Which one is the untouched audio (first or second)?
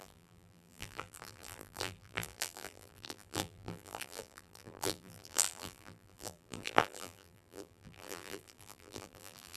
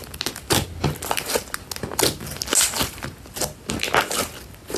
second